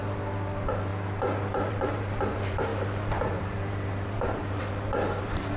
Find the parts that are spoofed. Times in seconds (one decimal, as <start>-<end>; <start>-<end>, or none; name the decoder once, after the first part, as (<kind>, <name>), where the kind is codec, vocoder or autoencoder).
0.0-0.9 (vocoder, BigVGAN v2); 1.7-5.6